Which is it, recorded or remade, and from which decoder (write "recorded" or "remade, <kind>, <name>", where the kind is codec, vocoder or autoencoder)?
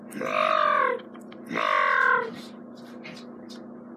recorded